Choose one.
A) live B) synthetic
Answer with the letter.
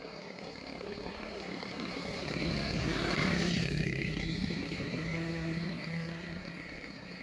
B